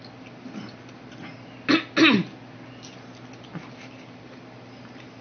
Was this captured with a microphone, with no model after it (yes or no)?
yes